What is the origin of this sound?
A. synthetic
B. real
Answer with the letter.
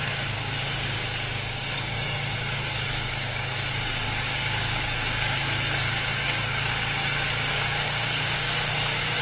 A